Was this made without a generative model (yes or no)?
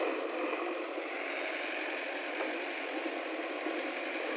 no